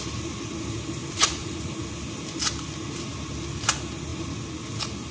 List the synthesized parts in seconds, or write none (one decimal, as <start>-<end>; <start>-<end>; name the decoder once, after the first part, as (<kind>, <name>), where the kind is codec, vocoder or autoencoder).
1.0-1.8 (vocoder, Vocos)